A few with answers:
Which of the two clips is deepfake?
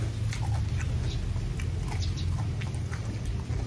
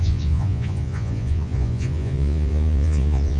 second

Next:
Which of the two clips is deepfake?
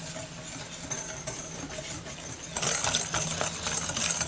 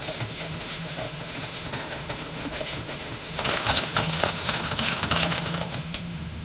second